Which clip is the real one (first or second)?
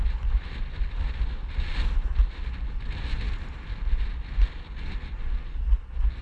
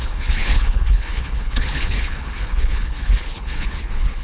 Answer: first